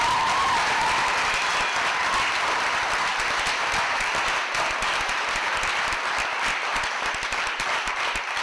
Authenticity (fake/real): fake